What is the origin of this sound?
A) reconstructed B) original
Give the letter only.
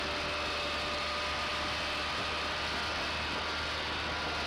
B